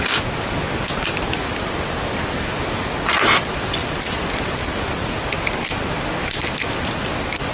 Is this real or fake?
real